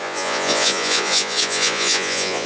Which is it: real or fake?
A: fake